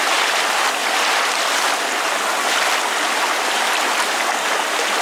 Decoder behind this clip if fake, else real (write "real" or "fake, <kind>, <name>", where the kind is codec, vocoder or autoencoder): real